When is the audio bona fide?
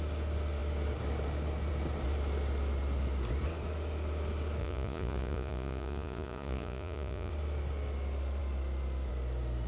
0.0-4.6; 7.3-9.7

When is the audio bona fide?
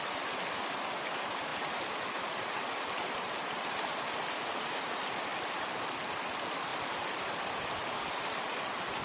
0.0-9.0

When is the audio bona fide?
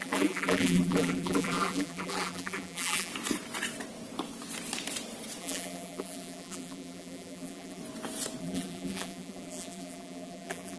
3.1-5.4; 7.8-8.4